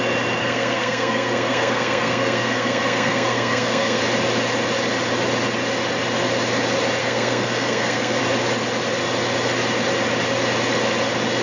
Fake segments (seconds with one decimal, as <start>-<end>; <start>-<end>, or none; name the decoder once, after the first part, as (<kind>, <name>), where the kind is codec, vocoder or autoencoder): 0.4-4.0 (codec, SNAC); 7.0-8.2